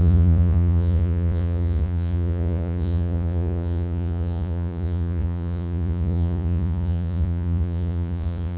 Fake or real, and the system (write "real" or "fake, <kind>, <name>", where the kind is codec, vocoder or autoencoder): fake, vocoder, Vocos